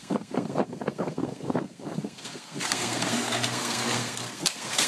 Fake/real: fake